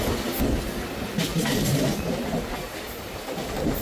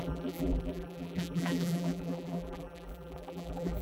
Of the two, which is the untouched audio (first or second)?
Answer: first